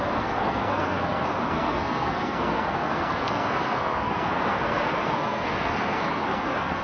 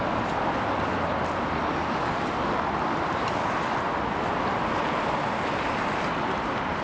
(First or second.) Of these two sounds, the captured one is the second